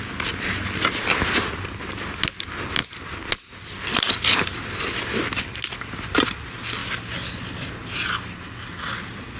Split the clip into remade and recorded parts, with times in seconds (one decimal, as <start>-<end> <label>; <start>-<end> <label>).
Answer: 0.0-9.4 recorded